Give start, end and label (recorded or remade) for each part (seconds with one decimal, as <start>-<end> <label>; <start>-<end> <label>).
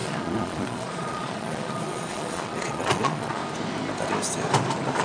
0.0-3.4 remade; 3.4-5.0 recorded